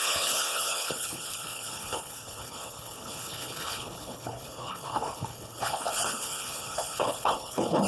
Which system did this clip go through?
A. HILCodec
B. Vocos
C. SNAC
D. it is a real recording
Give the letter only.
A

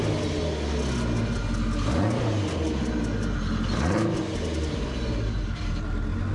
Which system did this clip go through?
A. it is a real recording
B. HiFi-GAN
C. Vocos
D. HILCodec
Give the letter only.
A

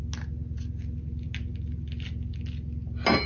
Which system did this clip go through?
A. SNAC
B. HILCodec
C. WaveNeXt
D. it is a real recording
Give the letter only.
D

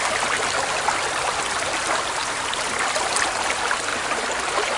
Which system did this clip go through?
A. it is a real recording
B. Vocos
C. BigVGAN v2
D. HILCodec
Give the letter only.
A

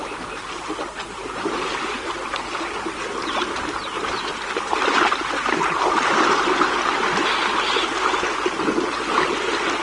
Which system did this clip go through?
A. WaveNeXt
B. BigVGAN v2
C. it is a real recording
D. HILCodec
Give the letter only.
C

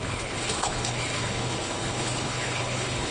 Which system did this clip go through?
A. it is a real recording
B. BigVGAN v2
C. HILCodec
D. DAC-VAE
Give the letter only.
C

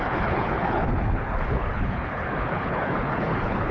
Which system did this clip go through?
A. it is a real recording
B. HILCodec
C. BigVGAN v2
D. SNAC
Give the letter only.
B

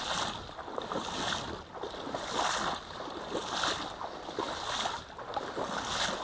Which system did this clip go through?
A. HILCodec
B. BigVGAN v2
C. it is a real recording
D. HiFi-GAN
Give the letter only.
C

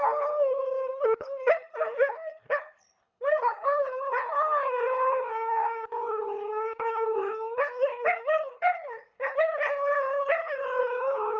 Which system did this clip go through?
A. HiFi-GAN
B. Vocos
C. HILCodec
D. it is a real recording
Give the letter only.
C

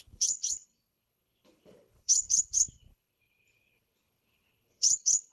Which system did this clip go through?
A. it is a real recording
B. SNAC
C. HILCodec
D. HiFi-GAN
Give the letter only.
C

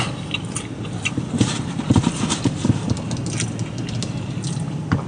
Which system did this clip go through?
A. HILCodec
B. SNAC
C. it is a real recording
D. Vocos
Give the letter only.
C